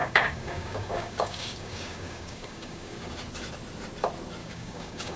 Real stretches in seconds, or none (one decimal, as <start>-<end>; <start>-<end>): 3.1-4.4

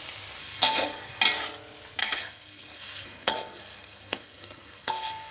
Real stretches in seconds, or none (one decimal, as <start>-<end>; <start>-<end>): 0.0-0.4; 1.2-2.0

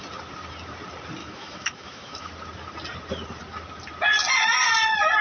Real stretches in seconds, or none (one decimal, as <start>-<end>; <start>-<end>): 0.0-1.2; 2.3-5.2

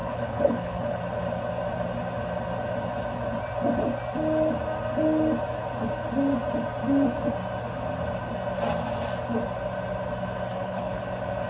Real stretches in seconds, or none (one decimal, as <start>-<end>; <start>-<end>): 1.0-10.5; 11.0-11.5

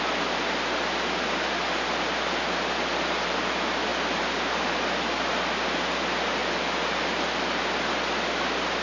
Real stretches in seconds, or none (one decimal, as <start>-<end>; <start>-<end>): 0.0-8.8

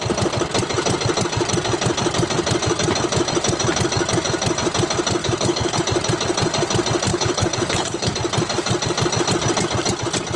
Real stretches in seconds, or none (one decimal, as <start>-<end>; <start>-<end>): 0.0-5.2; 5.8-7.1; 8.1-10.4